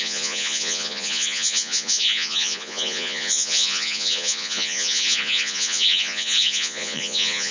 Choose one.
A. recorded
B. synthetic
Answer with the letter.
B